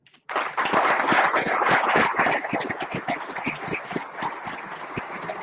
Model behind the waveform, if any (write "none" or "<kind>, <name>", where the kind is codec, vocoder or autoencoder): none